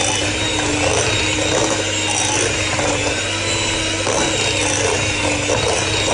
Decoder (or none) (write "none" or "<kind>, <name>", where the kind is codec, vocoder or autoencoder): none